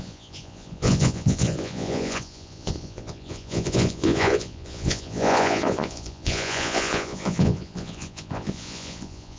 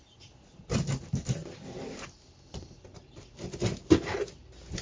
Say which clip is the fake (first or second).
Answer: first